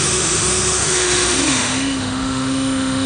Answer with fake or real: fake